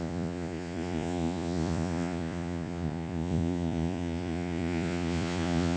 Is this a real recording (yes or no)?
no